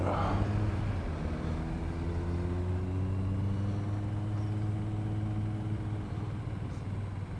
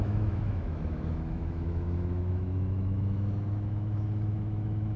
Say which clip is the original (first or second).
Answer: first